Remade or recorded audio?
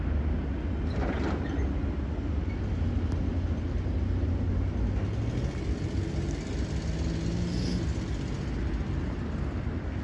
recorded